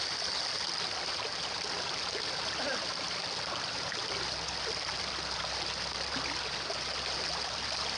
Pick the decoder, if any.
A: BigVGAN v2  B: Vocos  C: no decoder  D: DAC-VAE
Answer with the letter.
C